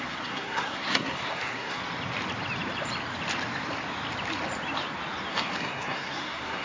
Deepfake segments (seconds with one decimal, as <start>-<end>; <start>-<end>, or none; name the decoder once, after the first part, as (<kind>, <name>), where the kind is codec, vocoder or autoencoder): 0.0-1.8 (codec, SNAC); 5.3-6.6